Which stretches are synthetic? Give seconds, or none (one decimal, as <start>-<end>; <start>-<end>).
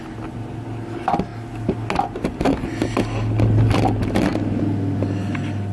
none